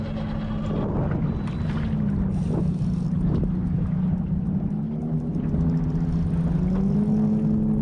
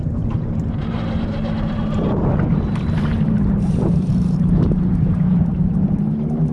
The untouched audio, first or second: first